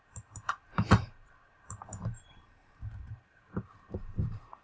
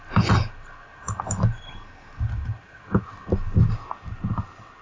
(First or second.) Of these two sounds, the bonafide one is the second